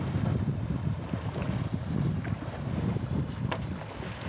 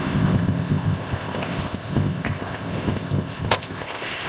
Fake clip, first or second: second